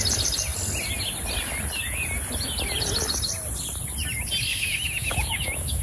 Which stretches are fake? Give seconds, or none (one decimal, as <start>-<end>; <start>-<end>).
4.5-5.8